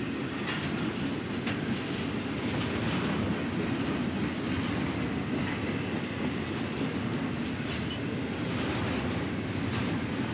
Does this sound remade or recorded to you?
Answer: recorded